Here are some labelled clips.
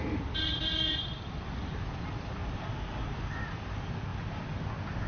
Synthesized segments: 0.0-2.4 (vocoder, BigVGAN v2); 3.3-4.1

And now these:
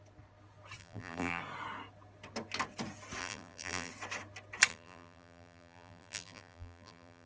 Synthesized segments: 0.8-1.4 (vocoder, BigVGAN v2); 3.2-3.9; 4.7-7.3